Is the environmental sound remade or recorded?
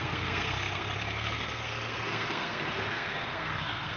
remade